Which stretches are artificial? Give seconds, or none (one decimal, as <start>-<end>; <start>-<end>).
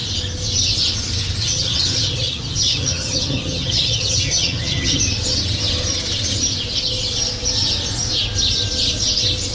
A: 1.4-5.0